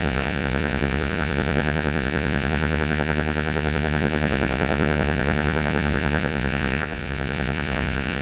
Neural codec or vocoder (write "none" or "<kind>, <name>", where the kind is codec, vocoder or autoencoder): vocoder, Vocos